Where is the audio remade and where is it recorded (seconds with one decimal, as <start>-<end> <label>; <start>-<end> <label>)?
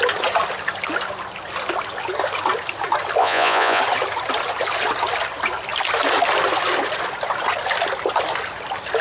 0.0-3.2 recorded; 3.2-3.8 remade; 3.8-9.0 recorded